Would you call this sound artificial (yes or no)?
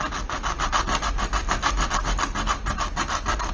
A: no